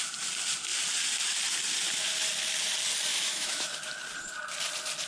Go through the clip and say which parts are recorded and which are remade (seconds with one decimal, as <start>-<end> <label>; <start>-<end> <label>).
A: 0.0-3.1 recorded; 3.1-3.7 remade; 3.7-5.1 recorded